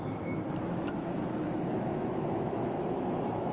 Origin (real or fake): fake